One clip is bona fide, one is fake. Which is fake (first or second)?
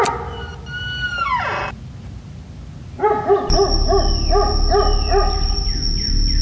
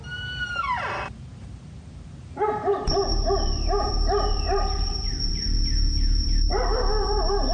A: second